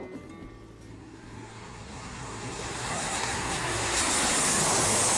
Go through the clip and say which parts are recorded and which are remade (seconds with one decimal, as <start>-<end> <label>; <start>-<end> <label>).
0.0-0.9 recorded; 0.9-4.0 remade; 4.0-5.2 recorded